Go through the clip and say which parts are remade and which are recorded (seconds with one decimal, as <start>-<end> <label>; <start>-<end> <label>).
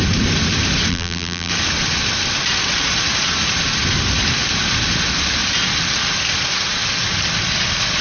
0.0-0.9 recorded; 0.9-1.5 remade; 1.5-8.0 recorded